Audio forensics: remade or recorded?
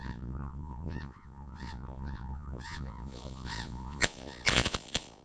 remade